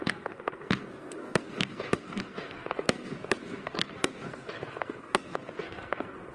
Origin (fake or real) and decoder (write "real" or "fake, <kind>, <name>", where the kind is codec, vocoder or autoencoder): fake, codec, SNAC